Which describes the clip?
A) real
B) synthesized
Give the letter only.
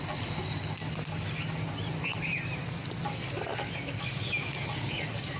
A